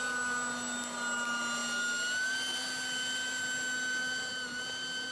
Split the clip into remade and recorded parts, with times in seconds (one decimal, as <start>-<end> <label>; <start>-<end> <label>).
0.0-5.1 recorded